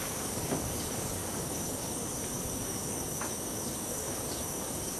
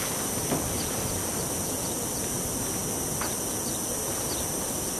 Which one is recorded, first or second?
second